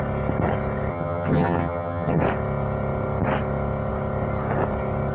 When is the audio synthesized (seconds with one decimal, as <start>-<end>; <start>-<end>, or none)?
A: 0.9-2.2